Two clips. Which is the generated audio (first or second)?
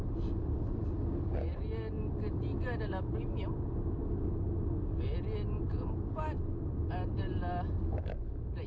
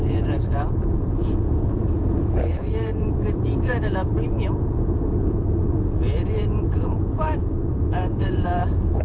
second